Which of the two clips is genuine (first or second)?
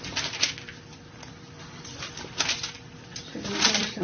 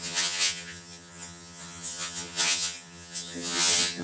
first